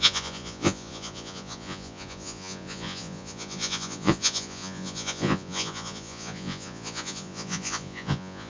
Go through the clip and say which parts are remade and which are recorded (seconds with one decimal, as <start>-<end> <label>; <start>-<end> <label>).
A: 0.0-8.5 remade